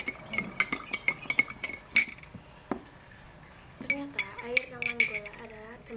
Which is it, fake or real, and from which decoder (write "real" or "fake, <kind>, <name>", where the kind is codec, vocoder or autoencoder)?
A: real